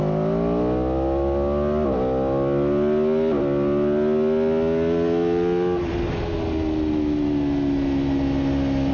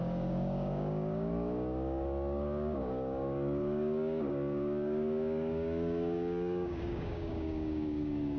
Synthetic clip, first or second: second